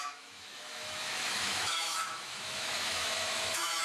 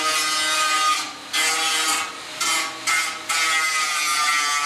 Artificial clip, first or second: first